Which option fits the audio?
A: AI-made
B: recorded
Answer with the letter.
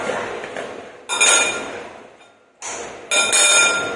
B